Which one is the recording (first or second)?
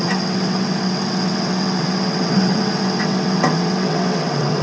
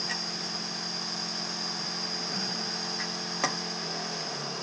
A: second